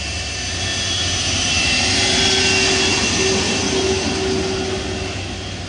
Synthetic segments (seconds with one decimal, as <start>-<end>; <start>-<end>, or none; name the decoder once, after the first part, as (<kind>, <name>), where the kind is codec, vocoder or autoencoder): 0.7-2.2 (vocoder, BigVGAN v2)